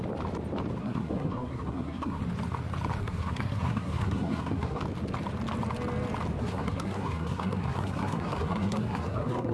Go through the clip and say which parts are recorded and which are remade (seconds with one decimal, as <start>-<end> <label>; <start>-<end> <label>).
0.0-0.8 recorded; 0.8-2.2 remade; 2.2-3.0 recorded; 3.0-4.8 remade; 4.8-6.4 recorded; 6.4-9.5 remade

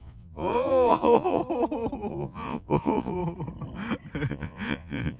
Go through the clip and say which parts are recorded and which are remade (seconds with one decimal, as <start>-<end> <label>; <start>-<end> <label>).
0.0-1.4 remade; 1.4-2.1 recorded; 2.1-3.2 remade; 3.2-4.3 recorded; 4.3-5.2 remade

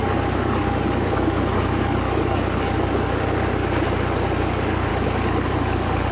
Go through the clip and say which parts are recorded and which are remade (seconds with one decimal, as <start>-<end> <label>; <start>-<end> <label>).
0.0-3.6 remade; 3.6-4.4 recorded; 4.4-4.9 remade; 4.9-5.5 recorded; 5.5-6.1 remade

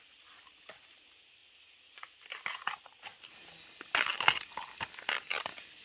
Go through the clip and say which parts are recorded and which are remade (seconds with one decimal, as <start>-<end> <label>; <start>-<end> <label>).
0.0-1.4 recorded; 1.4-2.2 remade; 2.2-5.8 recorded